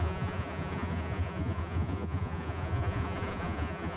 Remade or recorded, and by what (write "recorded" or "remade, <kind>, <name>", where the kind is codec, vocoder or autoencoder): remade, vocoder, Vocos